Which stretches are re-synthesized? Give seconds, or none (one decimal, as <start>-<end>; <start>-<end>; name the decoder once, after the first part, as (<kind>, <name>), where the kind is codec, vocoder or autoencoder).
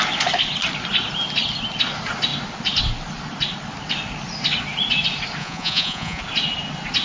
5.4-6.2 (vocoder, Vocos)